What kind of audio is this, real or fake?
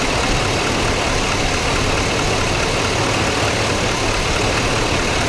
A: real